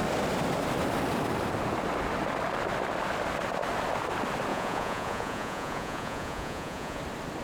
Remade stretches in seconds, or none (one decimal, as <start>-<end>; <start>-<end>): 4.5-7.0